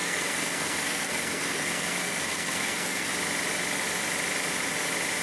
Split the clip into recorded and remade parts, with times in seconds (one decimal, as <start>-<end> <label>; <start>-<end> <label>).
0.0-3.1 remade; 3.1-5.2 recorded

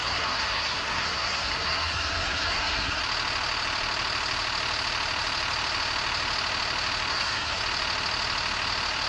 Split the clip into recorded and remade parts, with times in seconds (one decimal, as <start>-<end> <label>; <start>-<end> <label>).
0.0-3.0 remade; 3.0-7.1 recorded; 7.1-7.6 remade; 7.6-9.1 recorded

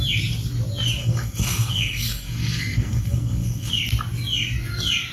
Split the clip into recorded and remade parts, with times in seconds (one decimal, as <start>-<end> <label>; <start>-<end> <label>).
0.0-1.0 recorded; 1.0-3.7 remade; 3.7-5.1 recorded

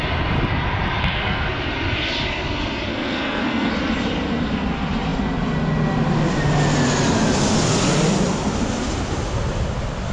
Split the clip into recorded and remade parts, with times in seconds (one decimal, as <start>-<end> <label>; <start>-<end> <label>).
0.0-1.0 recorded; 1.0-1.5 remade; 1.5-2.9 recorded; 2.9-3.7 remade; 3.7-10.1 recorded